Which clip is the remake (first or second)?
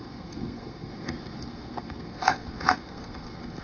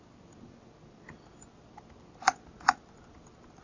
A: first